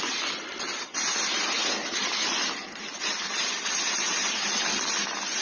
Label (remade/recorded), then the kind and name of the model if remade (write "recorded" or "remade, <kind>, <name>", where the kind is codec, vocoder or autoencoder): recorded